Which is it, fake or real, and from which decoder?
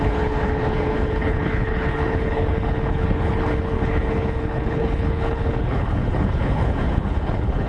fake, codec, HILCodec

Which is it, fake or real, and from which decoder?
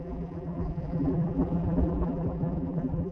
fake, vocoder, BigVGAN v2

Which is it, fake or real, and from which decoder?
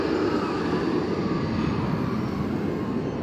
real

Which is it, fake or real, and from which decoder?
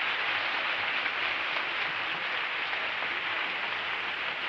real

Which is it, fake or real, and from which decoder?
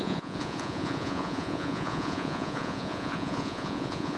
fake, vocoder, Vocos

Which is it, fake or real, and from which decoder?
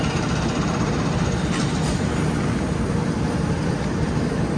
real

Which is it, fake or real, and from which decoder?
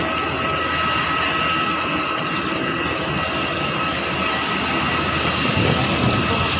real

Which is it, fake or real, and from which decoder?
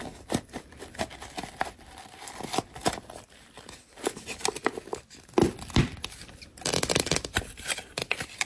real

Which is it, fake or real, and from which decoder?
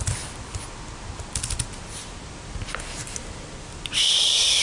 real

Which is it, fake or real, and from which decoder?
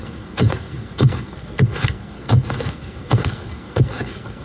fake, codec, SNAC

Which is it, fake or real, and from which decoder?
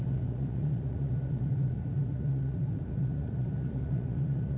fake, vocoder, Vocos